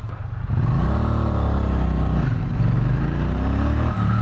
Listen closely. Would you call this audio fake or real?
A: real